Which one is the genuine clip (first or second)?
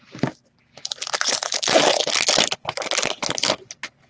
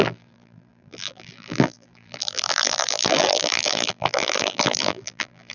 first